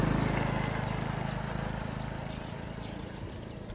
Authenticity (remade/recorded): recorded